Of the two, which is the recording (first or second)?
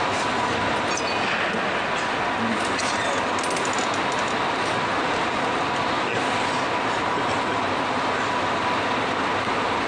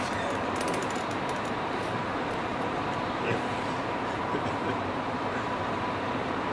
first